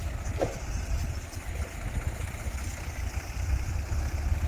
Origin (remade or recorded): recorded